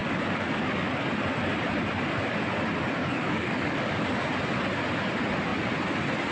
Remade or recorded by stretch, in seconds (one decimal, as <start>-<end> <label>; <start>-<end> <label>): 0.0-0.9 remade; 0.9-3.0 recorded; 3.0-4.2 remade; 4.2-6.3 recorded